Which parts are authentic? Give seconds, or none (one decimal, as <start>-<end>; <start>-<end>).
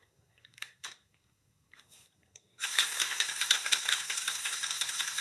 none